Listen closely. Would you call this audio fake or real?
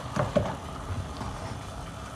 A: real